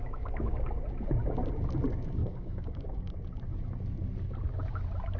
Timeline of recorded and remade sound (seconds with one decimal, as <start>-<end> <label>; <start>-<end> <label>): 0.0-0.7 remade; 0.7-2.2 recorded; 2.2-3.1 remade; 3.1-5.2 recorded